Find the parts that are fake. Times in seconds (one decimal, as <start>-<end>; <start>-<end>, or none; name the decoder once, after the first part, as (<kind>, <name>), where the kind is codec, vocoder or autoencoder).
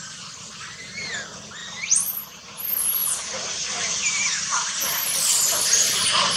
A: 1.6-2.5 (vocoder, BigVGAN v2); 3.0-6.0